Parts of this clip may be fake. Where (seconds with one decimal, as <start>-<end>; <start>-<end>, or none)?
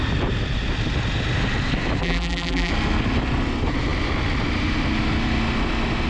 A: 2.0-2.7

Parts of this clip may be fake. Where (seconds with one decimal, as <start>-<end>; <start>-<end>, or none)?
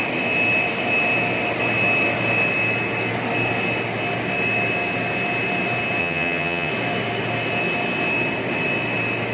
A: 6.0-6.7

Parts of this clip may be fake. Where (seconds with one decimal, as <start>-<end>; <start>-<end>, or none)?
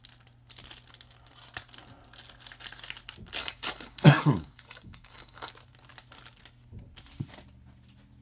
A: 3.4-5.5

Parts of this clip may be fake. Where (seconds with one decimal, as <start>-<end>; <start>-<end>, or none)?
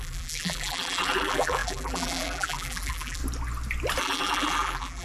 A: 0.0-3.2; 4.0-5.0